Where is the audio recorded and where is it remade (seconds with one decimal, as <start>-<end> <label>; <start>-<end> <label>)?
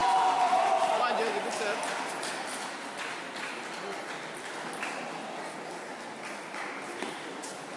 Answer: 0.0-7.8 recorded